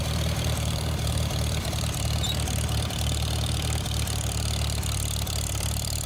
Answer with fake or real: fake